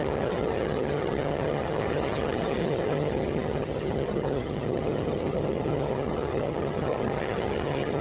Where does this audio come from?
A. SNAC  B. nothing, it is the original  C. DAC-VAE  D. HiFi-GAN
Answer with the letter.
D